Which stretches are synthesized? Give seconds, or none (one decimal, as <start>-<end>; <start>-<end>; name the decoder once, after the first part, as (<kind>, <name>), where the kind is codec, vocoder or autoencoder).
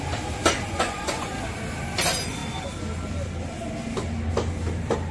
0.7-1.3 (vocoder, Vocos)